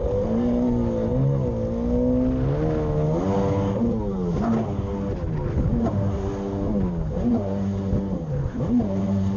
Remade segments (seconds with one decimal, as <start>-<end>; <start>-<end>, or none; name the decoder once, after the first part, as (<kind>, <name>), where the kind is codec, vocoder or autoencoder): 0.0-1.1 (vocoder, BigVGAN v2); 5.7-6.3; 7.1-9.4